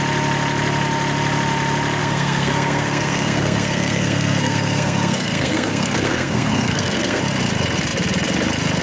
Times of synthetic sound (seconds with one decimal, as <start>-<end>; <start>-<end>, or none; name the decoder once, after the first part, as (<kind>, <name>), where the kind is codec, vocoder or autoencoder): 2.0-7.2 (codec, SNAC)